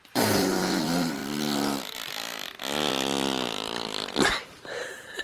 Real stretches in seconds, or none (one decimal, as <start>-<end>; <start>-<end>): 1.2-2.9